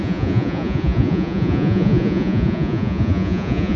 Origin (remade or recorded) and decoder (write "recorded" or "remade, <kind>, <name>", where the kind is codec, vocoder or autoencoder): remade, vocoder, Vocos